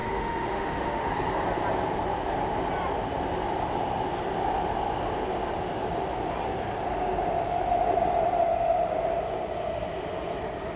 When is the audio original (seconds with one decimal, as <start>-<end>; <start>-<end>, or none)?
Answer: 1.1-10.8

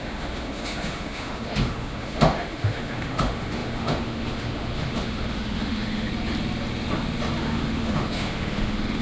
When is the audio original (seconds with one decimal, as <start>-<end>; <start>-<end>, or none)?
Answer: 6.1-7.4

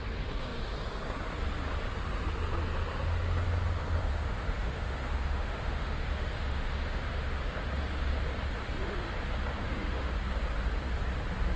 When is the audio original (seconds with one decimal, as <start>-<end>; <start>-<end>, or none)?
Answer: 0.0-4.1; 7.4-9.6; 10.1-11.6

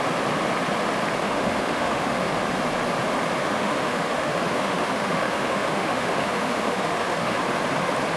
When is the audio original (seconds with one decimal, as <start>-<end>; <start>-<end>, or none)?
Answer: 0.0-1.2; 2.3-3.4; 7.4-8.2

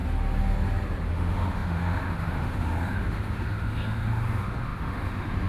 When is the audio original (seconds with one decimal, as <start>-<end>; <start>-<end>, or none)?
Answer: 0.0-1.1

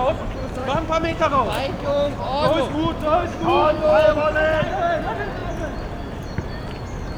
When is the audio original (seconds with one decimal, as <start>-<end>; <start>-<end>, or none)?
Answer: 0.0-0.6; 2.1-3.3; 3.8-7.2

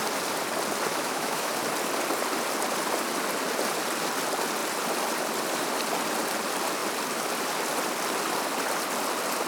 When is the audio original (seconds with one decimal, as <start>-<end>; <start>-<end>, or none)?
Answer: 0.0-0.9; 1.5-9.5